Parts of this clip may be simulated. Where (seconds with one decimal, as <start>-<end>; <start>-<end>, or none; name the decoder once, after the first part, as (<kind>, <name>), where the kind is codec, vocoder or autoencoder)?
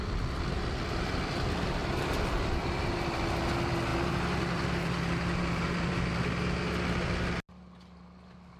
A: 1.8-2.9 (vocoder, BigVGAN v2); 3.9-6.0